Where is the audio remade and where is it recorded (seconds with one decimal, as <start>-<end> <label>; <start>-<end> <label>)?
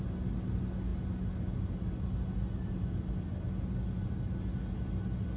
0.0-5.4 recorded